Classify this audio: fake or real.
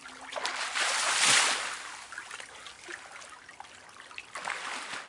real